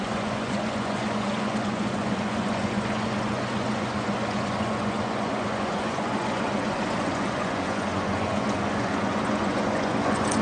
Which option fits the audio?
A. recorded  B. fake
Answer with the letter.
B